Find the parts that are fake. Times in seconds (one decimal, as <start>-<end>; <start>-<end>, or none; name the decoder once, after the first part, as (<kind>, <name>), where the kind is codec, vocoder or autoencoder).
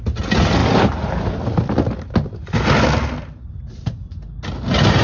none